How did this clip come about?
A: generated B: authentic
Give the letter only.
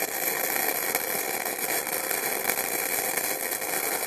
B